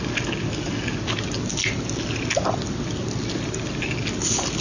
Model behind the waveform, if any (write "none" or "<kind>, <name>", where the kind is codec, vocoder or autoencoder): none